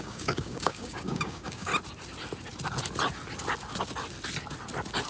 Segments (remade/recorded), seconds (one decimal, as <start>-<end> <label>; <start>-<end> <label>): 0.0-1.7 remade; 1.7-5.1 recorded